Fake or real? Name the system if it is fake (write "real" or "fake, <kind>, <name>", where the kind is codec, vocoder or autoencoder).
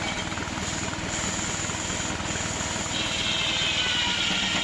real